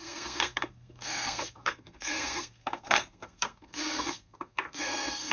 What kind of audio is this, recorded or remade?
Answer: remade